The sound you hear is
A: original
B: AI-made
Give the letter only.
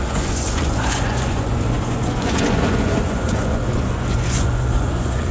B